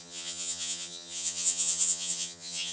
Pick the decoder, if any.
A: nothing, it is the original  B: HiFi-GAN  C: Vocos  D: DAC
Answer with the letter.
B